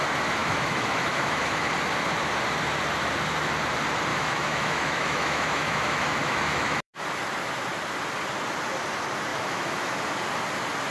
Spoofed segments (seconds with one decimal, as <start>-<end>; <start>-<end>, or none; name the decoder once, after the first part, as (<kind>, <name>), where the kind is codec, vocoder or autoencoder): 0.4-1.7 (autoencoder, DAC-VAE); 4.1-7.0; 9.3-9.9